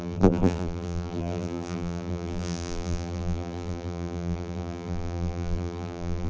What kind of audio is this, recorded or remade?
remade